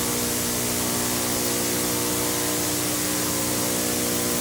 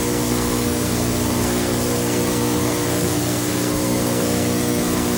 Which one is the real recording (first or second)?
first